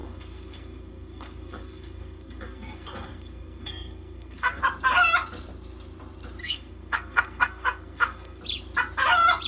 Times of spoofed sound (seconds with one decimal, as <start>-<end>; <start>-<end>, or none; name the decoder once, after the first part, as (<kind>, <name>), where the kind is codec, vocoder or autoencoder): 0.0-4.6 (codec, SNAC); 6.4-8.4

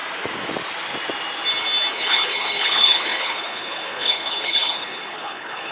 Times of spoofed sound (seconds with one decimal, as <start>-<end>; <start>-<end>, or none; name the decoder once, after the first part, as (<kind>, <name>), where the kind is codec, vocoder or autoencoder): 1.9-5.7 (codec, HILCodec)

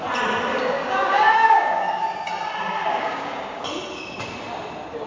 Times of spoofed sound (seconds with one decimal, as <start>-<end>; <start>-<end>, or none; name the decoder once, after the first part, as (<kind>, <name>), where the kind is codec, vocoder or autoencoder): 0.5-2.3 (codec, DAC); 2.9-3.6

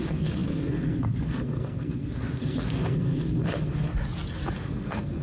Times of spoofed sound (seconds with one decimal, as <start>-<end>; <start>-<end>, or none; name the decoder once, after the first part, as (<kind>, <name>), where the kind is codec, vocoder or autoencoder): 0.0-3.9 (codec, SNAC); 4.6-5.2

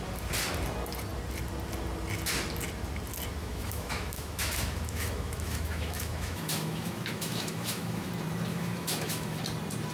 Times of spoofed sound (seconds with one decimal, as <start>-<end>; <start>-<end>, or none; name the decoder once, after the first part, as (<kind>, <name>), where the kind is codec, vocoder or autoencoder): 3.4-8.1 (autoencoder, DAC-VAE); 8.5-9.4

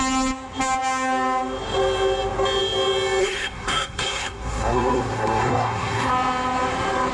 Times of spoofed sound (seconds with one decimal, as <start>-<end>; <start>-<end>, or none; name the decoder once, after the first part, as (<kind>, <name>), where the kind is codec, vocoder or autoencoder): 3.2-6.1 (codec, SNAC)